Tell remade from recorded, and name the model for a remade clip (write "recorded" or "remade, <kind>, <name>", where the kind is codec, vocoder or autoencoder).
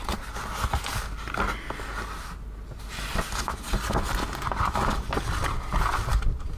recorded